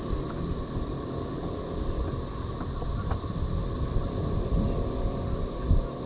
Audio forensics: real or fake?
fake